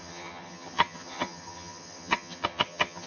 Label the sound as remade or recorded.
remade